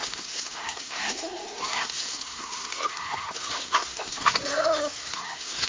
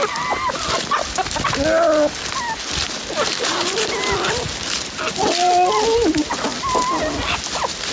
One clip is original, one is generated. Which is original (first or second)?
second